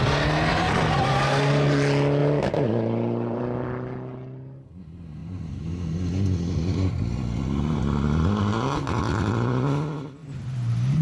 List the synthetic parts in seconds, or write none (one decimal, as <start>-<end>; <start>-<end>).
0.5-1.2; 2.2-3.4; 10.2-11.0